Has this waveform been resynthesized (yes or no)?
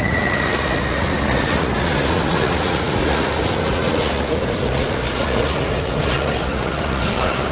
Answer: yes